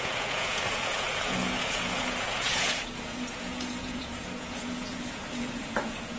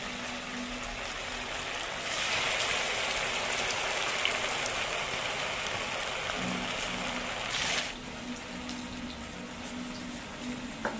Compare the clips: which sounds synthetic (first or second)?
first